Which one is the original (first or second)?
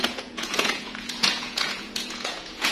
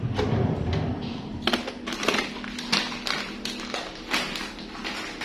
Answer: second